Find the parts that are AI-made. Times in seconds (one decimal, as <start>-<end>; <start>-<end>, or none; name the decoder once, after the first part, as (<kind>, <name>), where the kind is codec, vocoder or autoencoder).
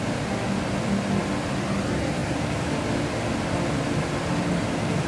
none